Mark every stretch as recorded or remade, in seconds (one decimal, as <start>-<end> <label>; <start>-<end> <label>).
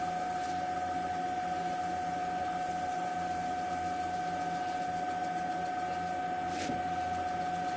0.0-7.8 recorded